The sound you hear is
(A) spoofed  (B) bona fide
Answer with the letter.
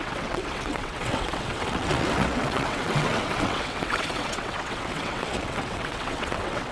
A